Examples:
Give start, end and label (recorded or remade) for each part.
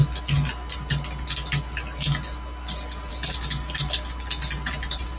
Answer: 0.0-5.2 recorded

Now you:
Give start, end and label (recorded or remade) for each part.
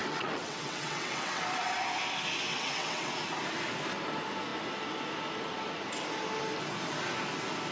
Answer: 0.0-1.4 remade; 1.4-2.5 recorded; 2.5-3.1 remade; 3.1-7.7 recorded